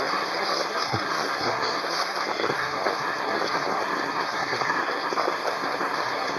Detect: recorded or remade remade